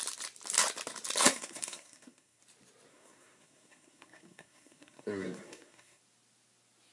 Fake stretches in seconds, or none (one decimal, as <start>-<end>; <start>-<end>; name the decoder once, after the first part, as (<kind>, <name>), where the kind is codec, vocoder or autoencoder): 1.3-2.4 (codec, SNAC); 2.9-6.0